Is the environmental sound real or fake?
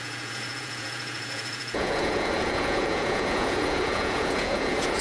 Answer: fake